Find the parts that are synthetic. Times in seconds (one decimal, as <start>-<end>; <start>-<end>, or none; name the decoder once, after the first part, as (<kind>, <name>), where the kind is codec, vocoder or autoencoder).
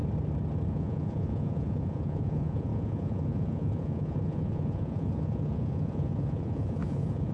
0.7-7.3 (vocoder, Vocos)